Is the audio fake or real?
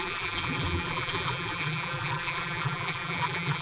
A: fake